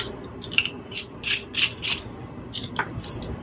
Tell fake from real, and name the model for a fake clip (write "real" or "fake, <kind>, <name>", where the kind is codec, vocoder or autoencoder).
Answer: real